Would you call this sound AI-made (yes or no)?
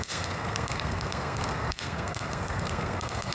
yes